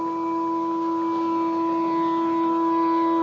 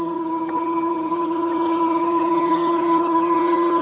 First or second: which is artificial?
second